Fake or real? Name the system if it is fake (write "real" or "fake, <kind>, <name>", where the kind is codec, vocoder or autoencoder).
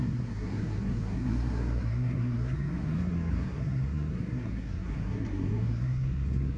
fake, codec, SNAC